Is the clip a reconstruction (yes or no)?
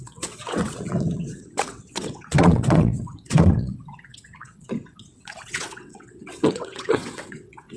yes